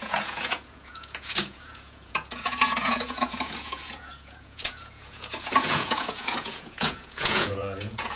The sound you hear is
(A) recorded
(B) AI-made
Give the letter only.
B